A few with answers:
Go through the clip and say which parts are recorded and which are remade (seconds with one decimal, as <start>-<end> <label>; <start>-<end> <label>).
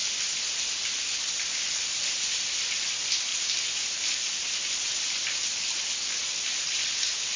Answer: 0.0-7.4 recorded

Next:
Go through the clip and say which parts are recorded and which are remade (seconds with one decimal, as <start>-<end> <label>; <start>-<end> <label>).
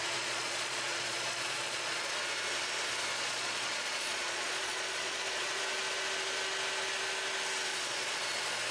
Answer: 0.0-2.1 remade; 2.1-3.1 recorded; 3.1-5.6 remade; 5.6-7.7 recorded; 7.7-8.2 remade; 8.2-8.7 recorded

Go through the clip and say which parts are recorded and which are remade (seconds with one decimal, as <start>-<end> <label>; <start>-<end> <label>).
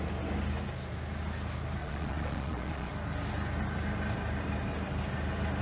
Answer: 0.0-1.8 recorded; 1.8-2.9 remade; 2.9-5.6 recorded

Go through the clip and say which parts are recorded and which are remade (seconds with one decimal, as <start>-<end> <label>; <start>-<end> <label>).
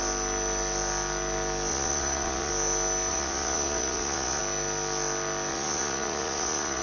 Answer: 0.0-1.7 recorded; 1.7-2.5 remade; 2.5-3.1 recorded; 3.1-4.4 remade; 4.4-5.5 recorded; 5.5-6.8 remade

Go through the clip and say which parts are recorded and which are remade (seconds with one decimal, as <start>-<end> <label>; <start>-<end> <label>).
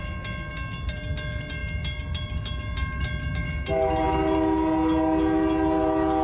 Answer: 0.0-6.2 recorded